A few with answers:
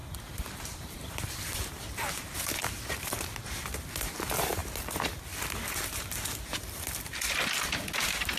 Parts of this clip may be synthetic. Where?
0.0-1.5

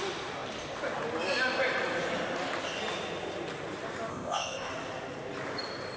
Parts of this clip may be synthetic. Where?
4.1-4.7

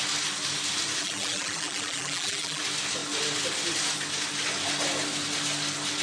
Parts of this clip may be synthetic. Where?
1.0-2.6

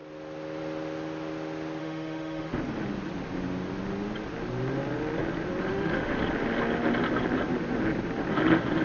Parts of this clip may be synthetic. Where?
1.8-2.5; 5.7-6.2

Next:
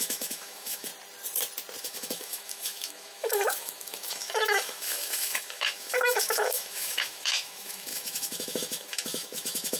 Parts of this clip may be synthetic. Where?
0.0-0.9; 1.8-9.8

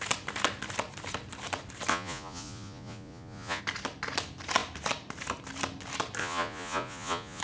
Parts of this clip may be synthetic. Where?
1.9-3.6; 6.2-7.4